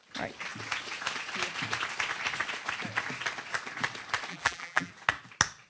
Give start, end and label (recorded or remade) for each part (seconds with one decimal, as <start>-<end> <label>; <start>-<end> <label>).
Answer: 0.0-4.3 recorded; 4.3-4.9 remade; 4.9-5.7 recorded